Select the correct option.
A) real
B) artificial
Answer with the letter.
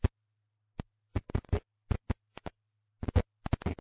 A